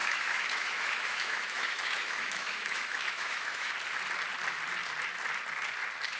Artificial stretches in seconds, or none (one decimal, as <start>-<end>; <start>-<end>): 0.0-3.7

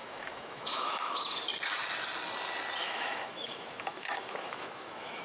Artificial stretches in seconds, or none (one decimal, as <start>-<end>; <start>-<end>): 0.0-1.2; 2.8-5.2

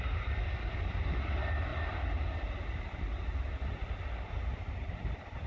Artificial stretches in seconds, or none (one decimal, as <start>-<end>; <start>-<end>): none